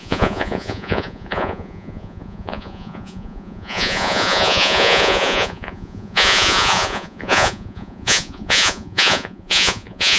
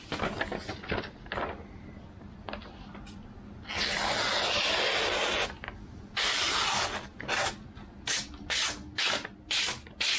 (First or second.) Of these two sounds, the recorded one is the second